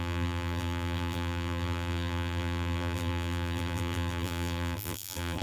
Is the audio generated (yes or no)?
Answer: yes